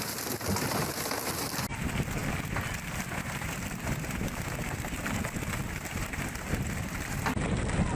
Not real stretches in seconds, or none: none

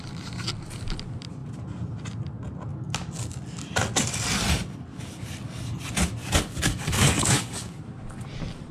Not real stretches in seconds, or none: 2.7-3.3 (codec, DAC); 6.2-7.8